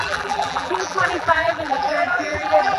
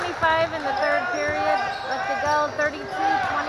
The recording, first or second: second